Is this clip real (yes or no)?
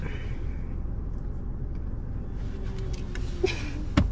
yes